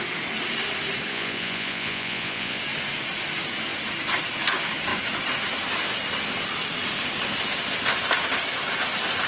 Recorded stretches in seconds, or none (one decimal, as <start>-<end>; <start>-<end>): 0.0-1.1; 2.6-9.3